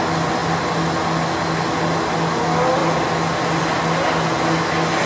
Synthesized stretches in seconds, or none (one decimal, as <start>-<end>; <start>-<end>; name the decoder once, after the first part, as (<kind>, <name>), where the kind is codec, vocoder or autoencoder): none